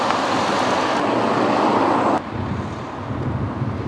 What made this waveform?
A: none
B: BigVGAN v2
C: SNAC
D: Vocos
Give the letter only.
A